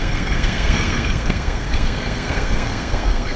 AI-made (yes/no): yes